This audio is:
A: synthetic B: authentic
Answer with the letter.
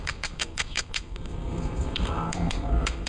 A